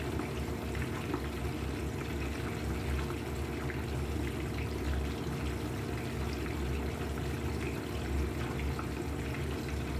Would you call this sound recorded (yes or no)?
yes